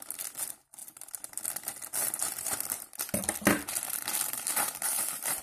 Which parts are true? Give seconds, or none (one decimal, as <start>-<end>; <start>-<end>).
0.0-0.8; 1.5-2.2

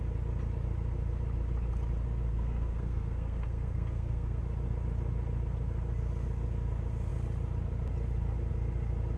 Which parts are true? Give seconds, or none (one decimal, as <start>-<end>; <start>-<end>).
0.0-2.3; 4.4-9.2

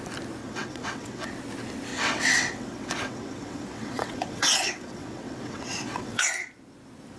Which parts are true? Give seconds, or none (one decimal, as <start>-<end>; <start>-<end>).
0.0-0.4; 1.3-1.9; 6.2-7.2